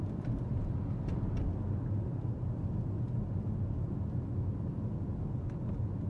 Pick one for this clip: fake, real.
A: real